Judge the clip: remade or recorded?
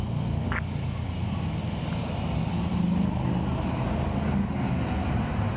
recorded